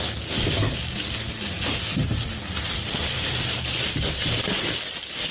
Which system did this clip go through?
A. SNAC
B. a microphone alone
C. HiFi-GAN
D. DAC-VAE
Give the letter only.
B